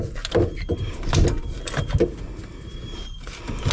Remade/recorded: recorded